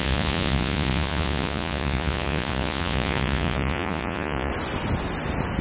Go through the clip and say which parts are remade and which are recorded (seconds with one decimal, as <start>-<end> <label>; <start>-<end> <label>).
0.0-4.5 remade; 4.5-5.6 recorded